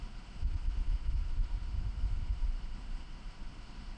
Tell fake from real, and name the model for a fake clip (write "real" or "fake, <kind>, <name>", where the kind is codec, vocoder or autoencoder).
fake, autoencoder, DAC-VAE